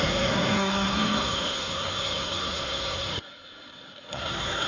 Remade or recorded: remade